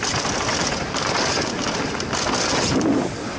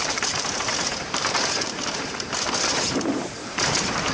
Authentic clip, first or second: first